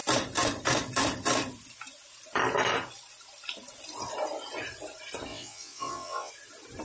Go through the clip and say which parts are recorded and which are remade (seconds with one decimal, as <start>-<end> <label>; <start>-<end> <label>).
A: 0.0-5.3 recorded; 5.3-6.3 remade; 6.3-6.8 recorded